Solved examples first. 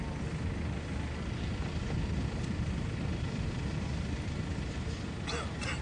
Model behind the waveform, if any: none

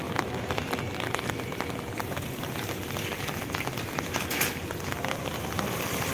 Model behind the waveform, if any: none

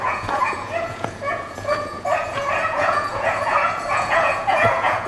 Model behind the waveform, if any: vocoder, Vocos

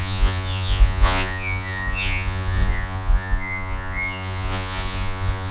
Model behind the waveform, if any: vocoder, Vocos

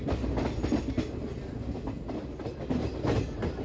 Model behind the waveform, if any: none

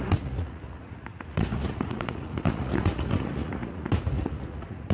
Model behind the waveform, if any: vocoder, Vocos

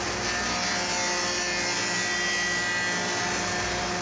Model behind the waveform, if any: none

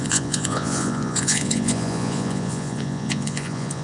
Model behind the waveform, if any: vocoder, Vocos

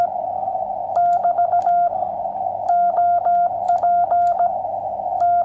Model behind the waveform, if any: none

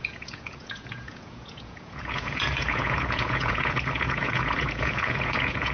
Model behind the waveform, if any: vocoder, Vocos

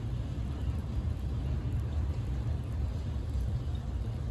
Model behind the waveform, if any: none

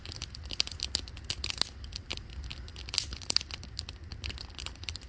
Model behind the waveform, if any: none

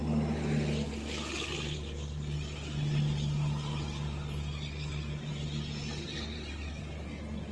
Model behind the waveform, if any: none